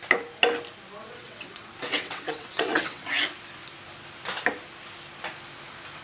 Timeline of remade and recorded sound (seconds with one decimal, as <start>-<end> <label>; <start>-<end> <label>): 0.0-1.0 recorded; 1.0-3.0 remade; 3.0-6.0 recorded